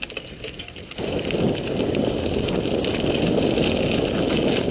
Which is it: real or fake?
real